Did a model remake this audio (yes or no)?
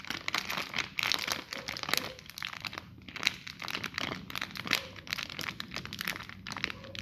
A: no